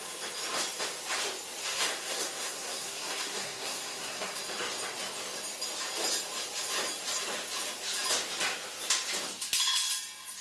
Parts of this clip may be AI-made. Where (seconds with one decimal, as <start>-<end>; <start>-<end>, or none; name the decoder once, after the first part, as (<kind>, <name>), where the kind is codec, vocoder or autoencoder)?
1.6-4.4 (codec, SNAC)